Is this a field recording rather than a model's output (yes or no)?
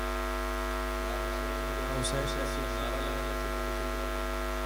yes